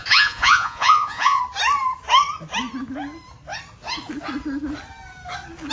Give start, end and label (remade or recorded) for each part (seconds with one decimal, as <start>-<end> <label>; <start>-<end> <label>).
0.0-1.4 remade; 1.4-5.7 recorded